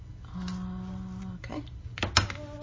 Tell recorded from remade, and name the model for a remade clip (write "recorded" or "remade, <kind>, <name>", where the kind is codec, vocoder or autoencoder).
recorded